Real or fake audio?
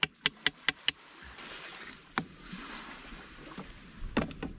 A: real